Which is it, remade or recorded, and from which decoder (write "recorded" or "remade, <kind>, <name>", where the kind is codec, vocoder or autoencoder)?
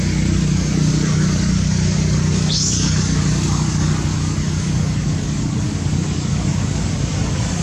remade, codec, DAC